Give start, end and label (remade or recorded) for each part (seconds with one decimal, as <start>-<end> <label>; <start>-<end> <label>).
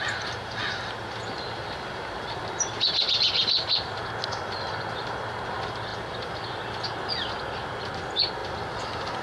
0.0-9.2 recorded